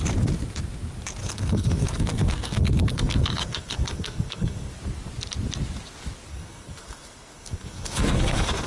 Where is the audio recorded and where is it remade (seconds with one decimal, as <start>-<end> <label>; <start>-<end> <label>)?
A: 0.0-1.2 recorded; 1.2-4.7 remade; 4.7-6.3 recorded; 6.3-8.7 remade